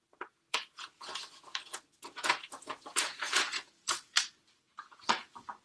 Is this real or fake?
fake